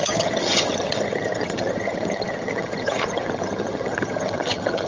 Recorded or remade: remade